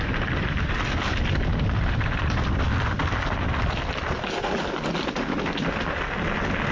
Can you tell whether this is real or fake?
real